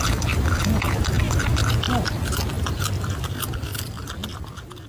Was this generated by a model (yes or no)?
no